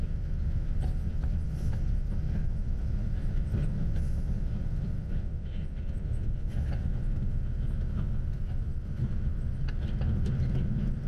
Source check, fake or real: real